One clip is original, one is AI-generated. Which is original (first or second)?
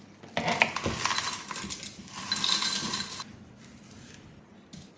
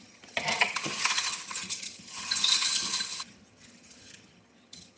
first